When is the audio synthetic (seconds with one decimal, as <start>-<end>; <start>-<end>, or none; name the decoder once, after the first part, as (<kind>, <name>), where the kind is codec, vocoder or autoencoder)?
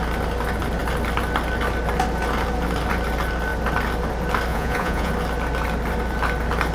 4.5-5.1 (vocoder, Vocos)